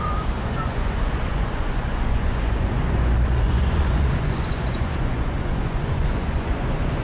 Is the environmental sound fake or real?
fake